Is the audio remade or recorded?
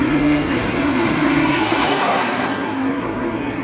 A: remade